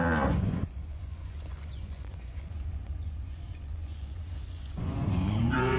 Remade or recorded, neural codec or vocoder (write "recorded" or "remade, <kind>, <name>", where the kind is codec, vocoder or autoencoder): remade, vocoder, Vocos